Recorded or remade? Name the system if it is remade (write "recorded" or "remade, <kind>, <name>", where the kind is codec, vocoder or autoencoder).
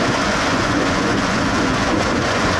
remade, vocoder, Vocos